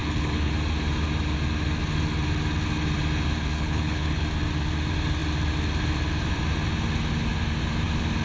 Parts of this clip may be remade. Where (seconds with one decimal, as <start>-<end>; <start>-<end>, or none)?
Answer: 0.0-0.5; 3.6-4.2